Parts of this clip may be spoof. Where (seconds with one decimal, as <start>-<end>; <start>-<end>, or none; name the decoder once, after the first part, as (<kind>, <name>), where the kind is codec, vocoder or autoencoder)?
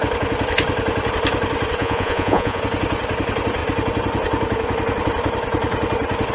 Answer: 1.8-2.6 (vocoder, Vocos)